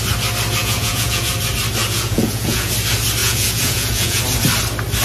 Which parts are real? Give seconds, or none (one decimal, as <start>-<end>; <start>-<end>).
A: 0.0-0.6; 1.3-1.8; 2.7-3.2; 4.2-5.0